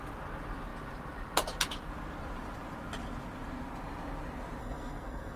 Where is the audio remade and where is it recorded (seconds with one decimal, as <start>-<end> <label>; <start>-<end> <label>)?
0.0-4.6 recorded; 4.6-5.4 remade